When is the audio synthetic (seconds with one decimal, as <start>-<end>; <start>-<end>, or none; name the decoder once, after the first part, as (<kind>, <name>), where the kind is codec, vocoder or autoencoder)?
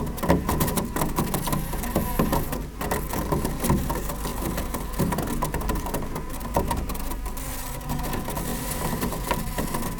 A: 8.5-9.1 (vocoder, BigVGAN v2)